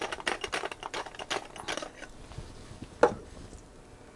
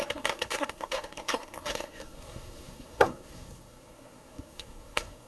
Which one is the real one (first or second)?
first